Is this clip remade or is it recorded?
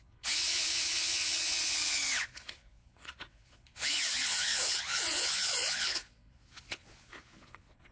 remade